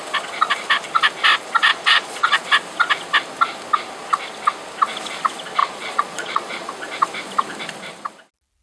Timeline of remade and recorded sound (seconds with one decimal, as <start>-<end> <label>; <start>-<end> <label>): 0.0-1.7 recorded; 1.7-2.4 remade; 2.4-5.6 recorded; 5.6-6.7 remade; 6.7-8.6 recorded